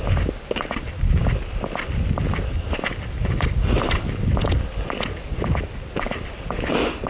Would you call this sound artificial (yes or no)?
no